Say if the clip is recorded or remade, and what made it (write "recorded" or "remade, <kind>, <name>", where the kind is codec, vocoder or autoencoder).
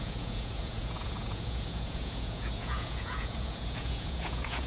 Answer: remade, vocoder, Vocos